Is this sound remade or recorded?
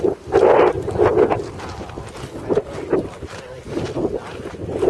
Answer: recorded